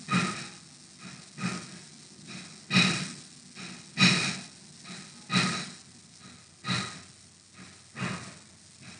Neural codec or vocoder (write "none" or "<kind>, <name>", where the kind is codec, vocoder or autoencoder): none